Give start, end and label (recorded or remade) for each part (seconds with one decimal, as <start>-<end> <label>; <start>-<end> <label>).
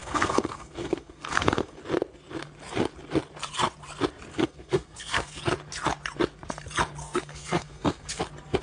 0.0-1.8 remade; 1.8-4.3 recorded; 4.3-5.4 remade; 5.4-7.0 recorded; 7.0-8.2 remade; 8.2-8.6 recorded